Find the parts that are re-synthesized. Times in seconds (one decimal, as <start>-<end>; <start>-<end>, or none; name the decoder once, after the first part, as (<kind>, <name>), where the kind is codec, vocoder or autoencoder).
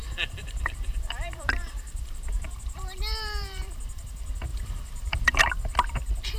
0.0-3.6 (vocoder, BigVGAN v2); 4.5-5.4